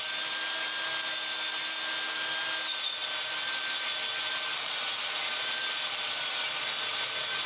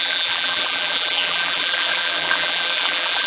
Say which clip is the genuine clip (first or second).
first